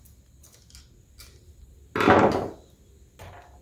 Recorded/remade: recorded